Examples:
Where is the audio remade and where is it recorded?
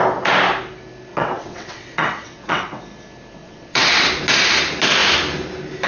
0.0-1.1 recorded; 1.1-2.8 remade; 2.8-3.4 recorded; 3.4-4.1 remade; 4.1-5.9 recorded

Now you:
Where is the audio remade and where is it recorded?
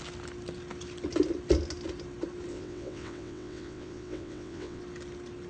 0.0-2.5 recorded; 2.5-4.8 remade; 4.8-5.5 recorded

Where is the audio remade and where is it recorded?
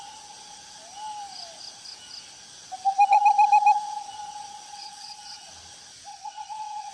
0.0-4.7 recorded; 4.7-5.5 remade; 5.5-6.1 recorded; 6.1-6.9 remade